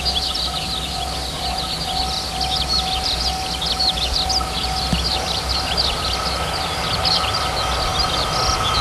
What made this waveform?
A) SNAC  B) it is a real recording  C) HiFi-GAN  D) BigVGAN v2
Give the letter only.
B